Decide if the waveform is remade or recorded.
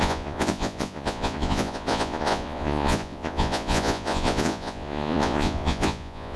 remade